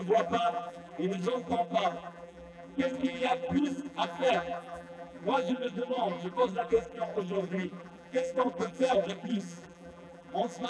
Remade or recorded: remade